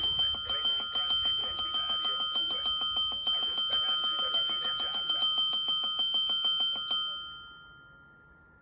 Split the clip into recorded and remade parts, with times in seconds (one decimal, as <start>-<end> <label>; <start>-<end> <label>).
0.0-8.6 recorded